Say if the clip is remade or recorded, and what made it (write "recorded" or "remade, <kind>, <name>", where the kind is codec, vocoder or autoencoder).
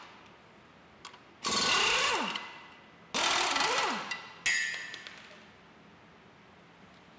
recorded